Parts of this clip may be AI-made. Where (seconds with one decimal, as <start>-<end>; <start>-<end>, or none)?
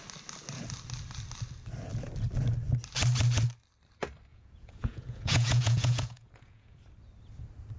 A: 4.3-6.8